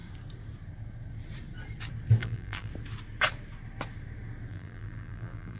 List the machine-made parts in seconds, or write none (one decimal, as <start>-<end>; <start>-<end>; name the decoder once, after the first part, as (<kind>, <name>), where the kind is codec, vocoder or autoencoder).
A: 2.2-2.7 (vocoder, BigVGAN v2); 4.5-5.6